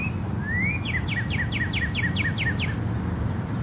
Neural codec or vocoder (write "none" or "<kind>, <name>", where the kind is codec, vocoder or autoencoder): none